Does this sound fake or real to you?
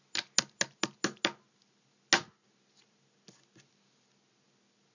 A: real